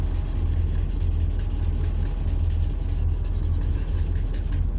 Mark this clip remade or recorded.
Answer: recorded